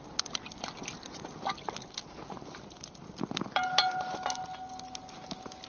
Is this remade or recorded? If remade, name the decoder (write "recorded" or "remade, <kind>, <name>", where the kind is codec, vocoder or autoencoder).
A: recorded